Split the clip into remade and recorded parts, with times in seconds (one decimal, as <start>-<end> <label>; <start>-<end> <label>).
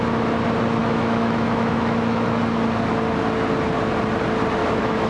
0.0-0.8 recorded; 0.8-2.4 remade; 2.4-4.6 recorded; 4.6-5.1 remade